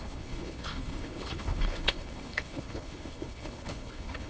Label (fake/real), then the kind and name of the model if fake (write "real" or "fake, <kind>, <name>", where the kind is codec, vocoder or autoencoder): fake, codec, HILCodec